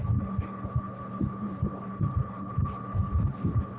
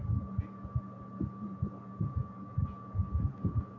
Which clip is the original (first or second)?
second